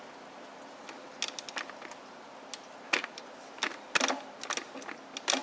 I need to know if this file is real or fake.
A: real